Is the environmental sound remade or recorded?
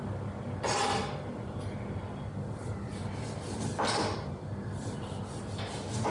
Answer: recorded